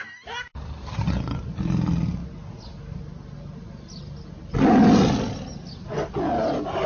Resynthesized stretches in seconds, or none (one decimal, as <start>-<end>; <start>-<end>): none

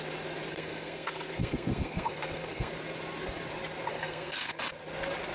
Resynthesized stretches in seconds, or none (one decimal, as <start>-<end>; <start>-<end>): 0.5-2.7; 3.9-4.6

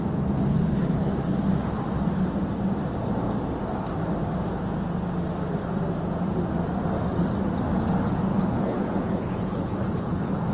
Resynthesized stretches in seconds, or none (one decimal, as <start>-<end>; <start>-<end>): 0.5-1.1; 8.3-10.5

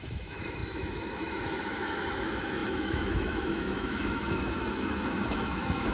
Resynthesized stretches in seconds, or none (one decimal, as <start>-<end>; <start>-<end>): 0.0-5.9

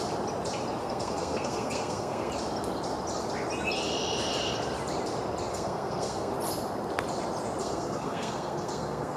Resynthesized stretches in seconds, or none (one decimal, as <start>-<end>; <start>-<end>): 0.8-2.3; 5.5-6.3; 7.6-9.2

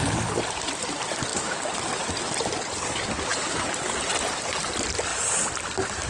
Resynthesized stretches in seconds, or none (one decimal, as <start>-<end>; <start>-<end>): 1.3-2.1

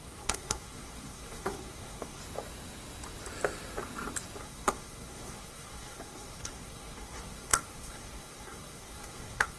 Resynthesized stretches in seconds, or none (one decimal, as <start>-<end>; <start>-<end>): 0.0-2.2; 4.4-9.6

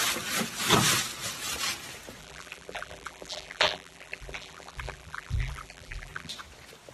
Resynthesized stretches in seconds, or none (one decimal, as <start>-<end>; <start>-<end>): 2.2-6.3